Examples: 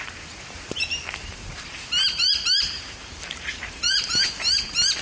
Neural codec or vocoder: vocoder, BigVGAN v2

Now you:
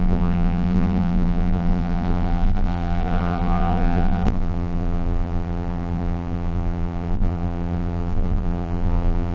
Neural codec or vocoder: vocoder, BigVGAN v2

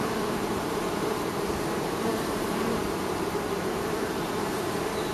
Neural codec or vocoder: vocoder, BigVGAN v2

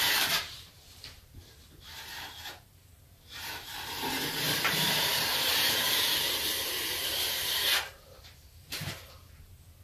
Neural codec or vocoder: vocoder, BigVGAN v2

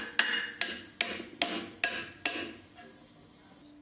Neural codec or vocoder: none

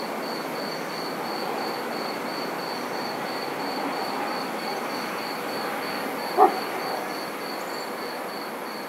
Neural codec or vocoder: none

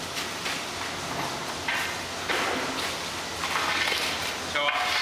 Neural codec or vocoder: none